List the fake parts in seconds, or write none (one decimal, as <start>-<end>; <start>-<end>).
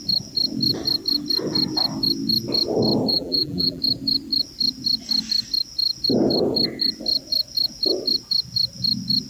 3.1-3.8